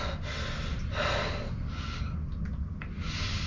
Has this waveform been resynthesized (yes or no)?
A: no